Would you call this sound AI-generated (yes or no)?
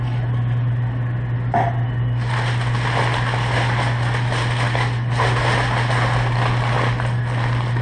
no